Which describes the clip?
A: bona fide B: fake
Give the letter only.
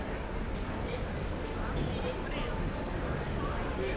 A